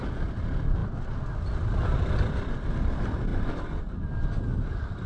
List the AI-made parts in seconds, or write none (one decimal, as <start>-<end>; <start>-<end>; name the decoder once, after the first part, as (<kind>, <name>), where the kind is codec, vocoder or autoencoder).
none